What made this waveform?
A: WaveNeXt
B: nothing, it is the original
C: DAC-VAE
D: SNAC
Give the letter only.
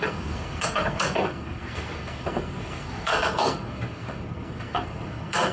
D